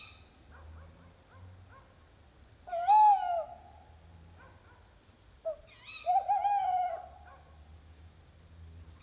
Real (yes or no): yes